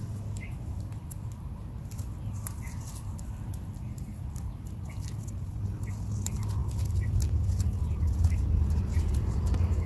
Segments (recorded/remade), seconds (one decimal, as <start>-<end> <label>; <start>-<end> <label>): 0.0-9.9 recorded